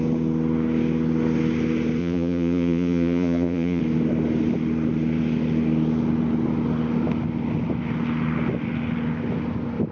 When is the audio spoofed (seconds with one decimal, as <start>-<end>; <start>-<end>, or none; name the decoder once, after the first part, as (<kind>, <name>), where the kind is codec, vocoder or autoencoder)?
2.0-3.8 (vocoder, Vocos)